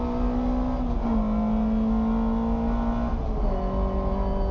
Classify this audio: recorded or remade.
recorded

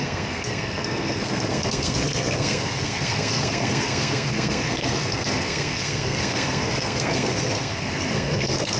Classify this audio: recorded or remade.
remade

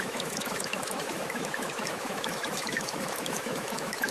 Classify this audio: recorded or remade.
remade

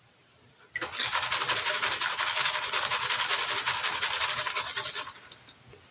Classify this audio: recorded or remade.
recorded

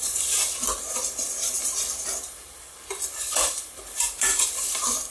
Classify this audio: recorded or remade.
remade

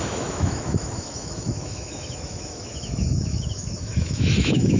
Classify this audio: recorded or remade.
remade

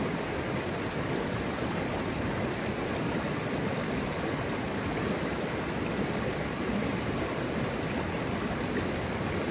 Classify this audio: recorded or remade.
remade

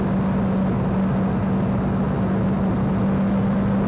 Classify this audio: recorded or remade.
recorded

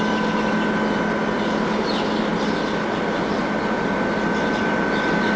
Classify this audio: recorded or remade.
recorded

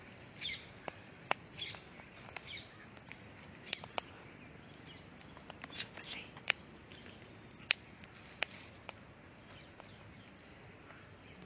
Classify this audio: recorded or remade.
recorded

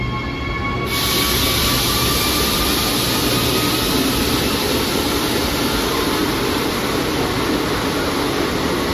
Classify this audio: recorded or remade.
recorded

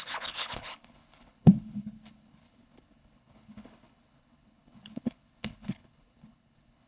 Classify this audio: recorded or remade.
remade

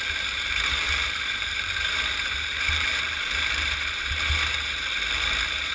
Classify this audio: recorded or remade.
remade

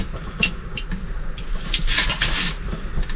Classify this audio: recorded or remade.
recorded